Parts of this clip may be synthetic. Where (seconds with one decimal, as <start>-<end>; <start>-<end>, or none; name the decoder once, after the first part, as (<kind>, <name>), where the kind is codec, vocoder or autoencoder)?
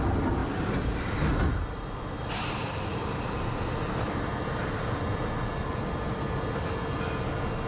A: 0.4-2.2 (vocoder, BigVGAN v2); 2.9-5.5